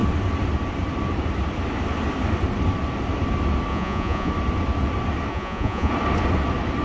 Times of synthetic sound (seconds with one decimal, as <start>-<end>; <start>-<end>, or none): 3.7-4.3; 5.3-5.9